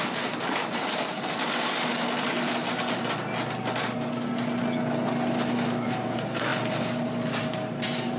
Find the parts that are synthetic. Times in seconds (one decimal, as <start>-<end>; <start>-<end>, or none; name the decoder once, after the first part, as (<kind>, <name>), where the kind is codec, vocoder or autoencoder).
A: none